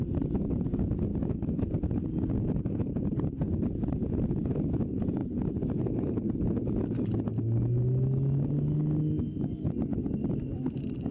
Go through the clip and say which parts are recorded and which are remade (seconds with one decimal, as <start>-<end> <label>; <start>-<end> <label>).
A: 0.0-11.1 recorded